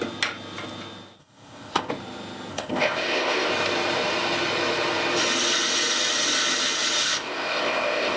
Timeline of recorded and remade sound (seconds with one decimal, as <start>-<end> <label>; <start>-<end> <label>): 0.0-1.2 recorded; 1.2-1.9 remade; 1.9-2.5 recorded; 2.5-3.5 remade; 3.5-7.0 recorded; 7.0-8.2 remade